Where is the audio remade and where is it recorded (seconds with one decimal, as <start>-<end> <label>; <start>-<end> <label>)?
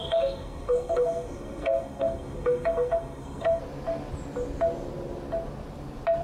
0.0-3.6 remade; 3.6-6.2 recorded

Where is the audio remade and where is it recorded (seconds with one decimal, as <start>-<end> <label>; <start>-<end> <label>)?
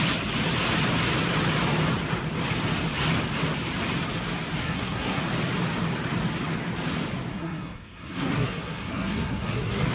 0.0-4.6 recorded; 4.6-5.2 remade; 5.2-7.3 recorded; 7.3-9.9 remade